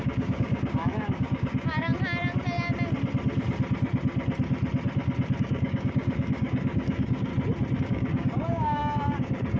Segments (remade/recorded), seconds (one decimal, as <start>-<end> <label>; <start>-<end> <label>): 0.0-1.9 remade; 1.9-5.4 recorded; 5.4-7.3 remade; 7.3-7.8 recorded; 7.8-9.6 remade